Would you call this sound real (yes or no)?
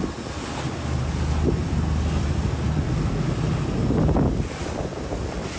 yes